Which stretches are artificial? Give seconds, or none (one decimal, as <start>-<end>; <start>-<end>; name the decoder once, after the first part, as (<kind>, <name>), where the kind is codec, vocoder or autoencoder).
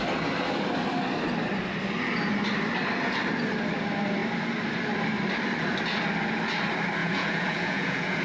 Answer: 7.0-8.2 (vocoder, Vocos)